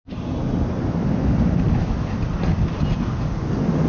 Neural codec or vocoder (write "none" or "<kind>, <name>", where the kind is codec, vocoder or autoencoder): none